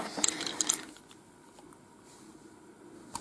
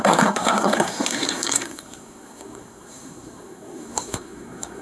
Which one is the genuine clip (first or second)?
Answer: first